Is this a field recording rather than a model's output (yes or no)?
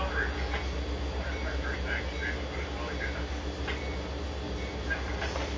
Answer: yes